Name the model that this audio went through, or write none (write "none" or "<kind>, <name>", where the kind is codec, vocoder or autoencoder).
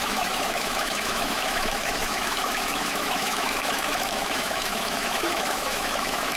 autoencoder, DAC-VAE